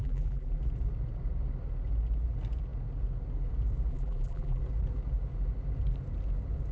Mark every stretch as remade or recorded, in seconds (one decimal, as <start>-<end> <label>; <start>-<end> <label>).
0.0-0.6 remade; 0.6-3.9 recorded; 3.9-4.6 remade; 4.6-6.7 recorded